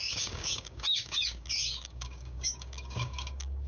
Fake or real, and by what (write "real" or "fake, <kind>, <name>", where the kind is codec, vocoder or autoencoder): fake, codec, DAC